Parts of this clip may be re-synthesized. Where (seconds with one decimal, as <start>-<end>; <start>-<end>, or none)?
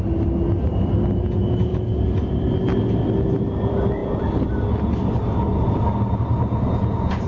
none